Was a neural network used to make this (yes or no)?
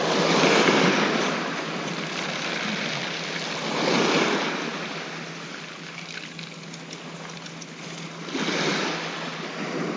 no